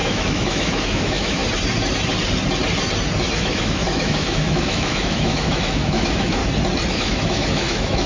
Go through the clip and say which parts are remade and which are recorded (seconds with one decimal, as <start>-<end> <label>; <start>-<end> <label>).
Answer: 0.0-1.4 remade; 1.4-3.3 recorded; 3.3-6.4 remade; 6.4-6.9 recorded; 6.9-8.1 remade